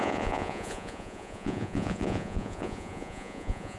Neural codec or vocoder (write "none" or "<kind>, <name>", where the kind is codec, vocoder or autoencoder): vocoder, Vocos